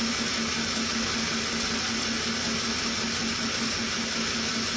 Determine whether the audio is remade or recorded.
recorded